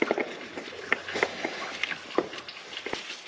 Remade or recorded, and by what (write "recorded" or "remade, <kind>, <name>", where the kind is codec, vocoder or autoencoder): recorded